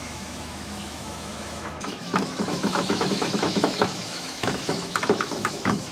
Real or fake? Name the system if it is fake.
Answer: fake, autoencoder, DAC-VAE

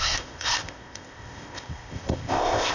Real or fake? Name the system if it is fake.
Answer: fake, codec, ZipCodec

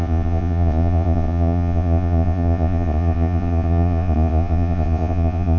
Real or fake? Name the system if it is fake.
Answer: fake, vocoder, Vocos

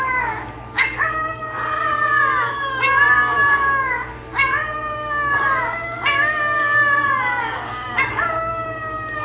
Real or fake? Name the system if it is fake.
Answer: fake, codec, DAC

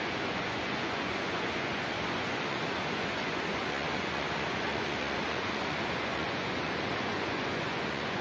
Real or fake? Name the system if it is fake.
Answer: fake, vocoder, Vocos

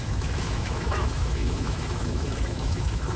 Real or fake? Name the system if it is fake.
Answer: fake, autoencoder, DAC-VAE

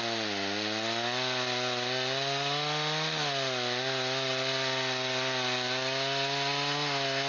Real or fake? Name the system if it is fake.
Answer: real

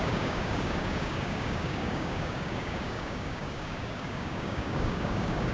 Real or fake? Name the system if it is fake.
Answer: fake, codec, DAC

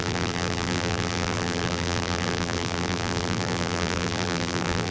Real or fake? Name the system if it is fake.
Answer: fake, vocoder, BigVGAN v2